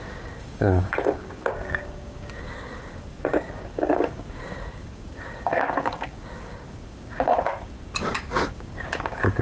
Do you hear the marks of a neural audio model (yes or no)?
yes